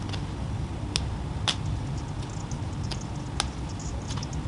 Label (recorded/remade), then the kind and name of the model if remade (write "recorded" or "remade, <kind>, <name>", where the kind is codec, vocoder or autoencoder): recorded